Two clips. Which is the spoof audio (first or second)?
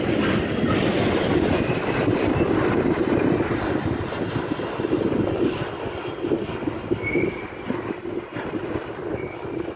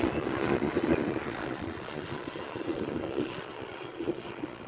second